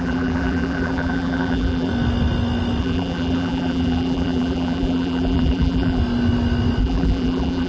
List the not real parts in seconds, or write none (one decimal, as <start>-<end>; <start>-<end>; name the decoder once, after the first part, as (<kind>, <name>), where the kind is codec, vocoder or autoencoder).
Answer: 0.0-1.9 (vocoder, BigVGAN v2); 2.8-6.0; 6.8-7.7

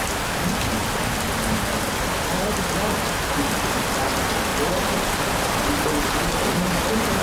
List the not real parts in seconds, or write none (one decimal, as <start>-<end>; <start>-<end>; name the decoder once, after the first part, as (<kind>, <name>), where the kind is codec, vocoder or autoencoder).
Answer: 4.5-7.2 (vocoder, BigVGAN v2)

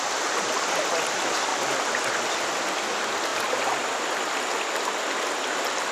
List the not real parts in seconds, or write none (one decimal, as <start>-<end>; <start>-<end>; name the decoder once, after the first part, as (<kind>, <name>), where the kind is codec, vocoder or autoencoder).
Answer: 3.3-4.4 (vocoder, BigVGAN v2)